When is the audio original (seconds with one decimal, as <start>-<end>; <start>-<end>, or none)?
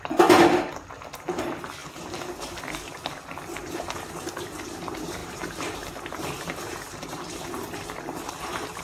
0.0-5.2; 7.2-8.8